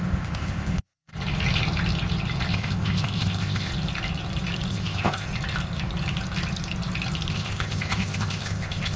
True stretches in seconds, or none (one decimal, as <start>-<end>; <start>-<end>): 1.1-2.5; 3.7-4.7; 5.3-7.3